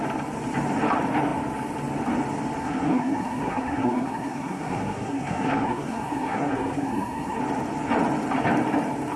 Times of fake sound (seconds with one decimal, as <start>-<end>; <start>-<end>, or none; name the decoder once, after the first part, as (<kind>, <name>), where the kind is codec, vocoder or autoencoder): 2.6-7.4 (codec, SNAC)